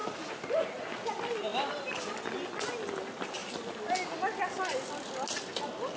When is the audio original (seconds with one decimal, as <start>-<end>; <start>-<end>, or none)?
0.8-6.0